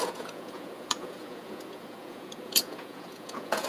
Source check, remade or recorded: remade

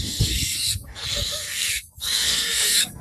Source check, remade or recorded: remade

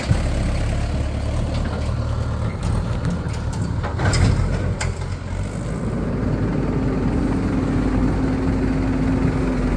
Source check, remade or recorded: recorded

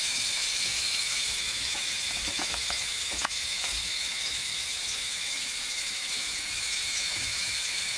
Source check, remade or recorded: remade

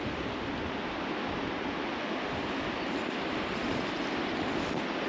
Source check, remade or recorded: recorded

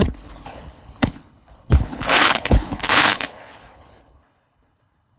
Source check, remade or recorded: remade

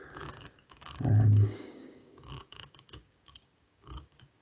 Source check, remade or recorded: remade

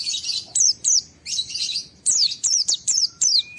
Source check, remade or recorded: remade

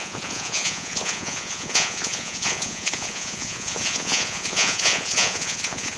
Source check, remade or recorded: remade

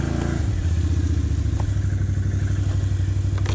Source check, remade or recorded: recorded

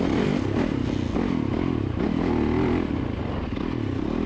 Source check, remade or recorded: recorded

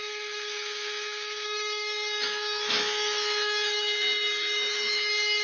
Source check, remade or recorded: remade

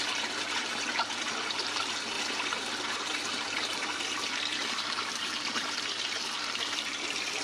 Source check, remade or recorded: remade